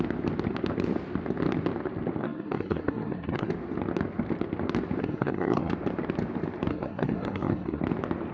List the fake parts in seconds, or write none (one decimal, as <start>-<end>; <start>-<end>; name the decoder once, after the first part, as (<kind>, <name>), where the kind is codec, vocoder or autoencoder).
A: 2.2-3.5 (codec, SNAC); 5.0-5.7; 6.7-7.8